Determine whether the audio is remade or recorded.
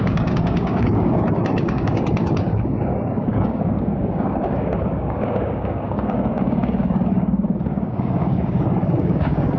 remade